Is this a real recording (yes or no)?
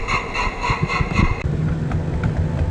yes